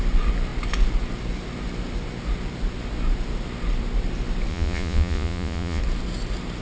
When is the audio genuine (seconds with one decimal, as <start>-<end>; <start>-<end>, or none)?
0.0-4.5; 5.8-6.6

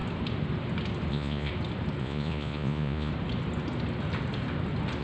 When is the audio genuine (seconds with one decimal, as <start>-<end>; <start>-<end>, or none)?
0.0-1.1; 1.5-2.0; 3.1-5.0

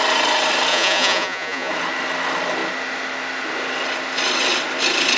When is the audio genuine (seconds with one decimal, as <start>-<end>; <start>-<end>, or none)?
0.0-0.7; 1.7-5.2

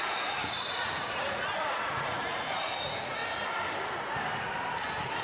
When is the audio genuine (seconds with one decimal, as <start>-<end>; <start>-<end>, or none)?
3.2-5.2

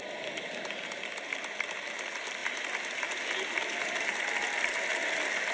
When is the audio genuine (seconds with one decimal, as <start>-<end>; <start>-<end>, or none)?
0.0-5.5

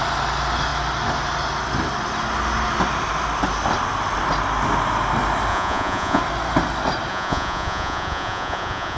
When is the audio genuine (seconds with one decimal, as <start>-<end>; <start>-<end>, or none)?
0.0-5.5; 6.2-7.1

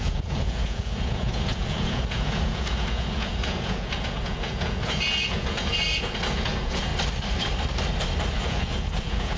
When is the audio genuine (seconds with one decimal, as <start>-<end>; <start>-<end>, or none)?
6.9-8.3